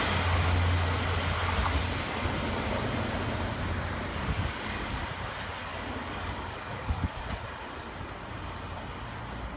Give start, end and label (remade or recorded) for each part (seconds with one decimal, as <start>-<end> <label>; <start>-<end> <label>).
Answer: 0.0-4.1 recorded; 4.1-5.0 remade; 5.0-5.7 recorded; 5.7-7.2 remade; 7.2-9.6 recorded